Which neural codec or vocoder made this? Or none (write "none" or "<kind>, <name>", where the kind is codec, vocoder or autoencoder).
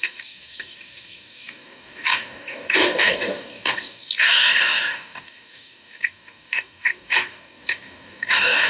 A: codec, DAC